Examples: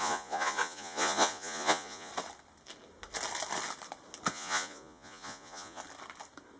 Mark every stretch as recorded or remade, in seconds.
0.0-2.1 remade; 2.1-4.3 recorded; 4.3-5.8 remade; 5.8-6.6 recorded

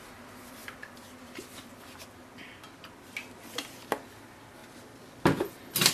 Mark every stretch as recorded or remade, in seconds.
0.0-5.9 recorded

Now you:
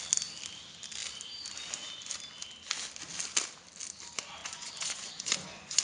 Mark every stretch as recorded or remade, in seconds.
0.0-4.4 recorded; 4.4-5.8 remade

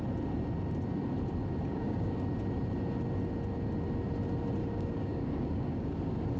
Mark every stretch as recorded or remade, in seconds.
0.0-1.7 recorded; 1.7-2.2 remade; 2.2-4.6 recorded; 4.6-6.0 remade; 6.0-6.4 recorded

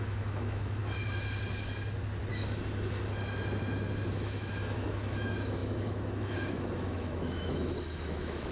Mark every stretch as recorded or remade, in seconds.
0.0-0.8 remade; 0.8-4.1 recorded; 4.1-8.5 remade

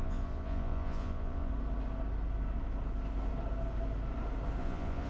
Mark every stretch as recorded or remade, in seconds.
0.0-1.5 remade; 1.5-4.6 recorded; 4.6-5.1 remade

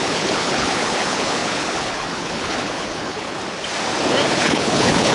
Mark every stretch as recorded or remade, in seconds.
0.0-3.4 remade; 3.4-4.3 recorded; 4.3-5.1 remade